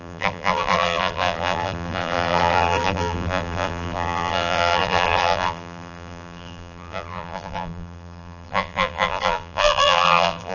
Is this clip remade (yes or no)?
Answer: yes